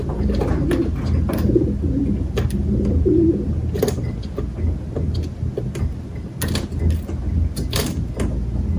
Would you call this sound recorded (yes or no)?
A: yes